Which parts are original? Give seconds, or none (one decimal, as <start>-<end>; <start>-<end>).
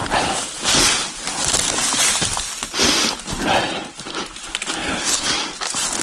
0.0-4.8; 5.3-6.0